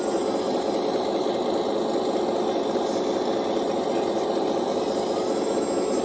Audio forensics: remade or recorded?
recorded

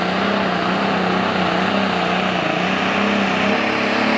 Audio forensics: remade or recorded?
recorded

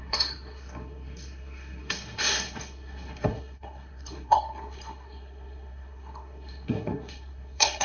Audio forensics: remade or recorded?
remade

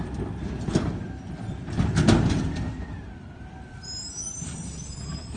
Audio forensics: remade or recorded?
recorded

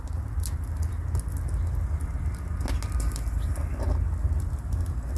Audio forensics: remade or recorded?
recorded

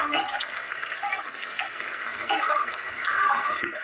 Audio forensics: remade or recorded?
remade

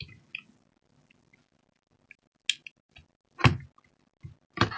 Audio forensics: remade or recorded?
recorded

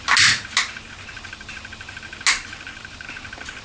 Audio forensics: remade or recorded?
recorded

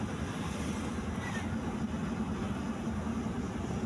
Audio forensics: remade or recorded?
recorded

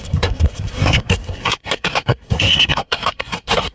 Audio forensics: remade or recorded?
remade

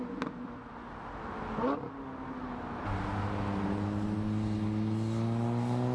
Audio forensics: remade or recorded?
recorded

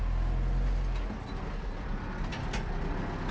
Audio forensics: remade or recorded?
recorded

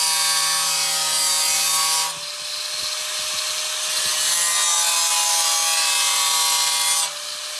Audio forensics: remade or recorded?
recorded